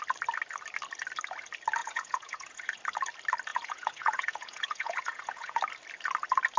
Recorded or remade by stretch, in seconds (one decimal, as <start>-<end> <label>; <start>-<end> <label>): 0.0-1.8 recorded; 1.8-2.8 remade; 2.8-3.5 recorded; 3.5-5.6 remade; 5.6-6.6 recorded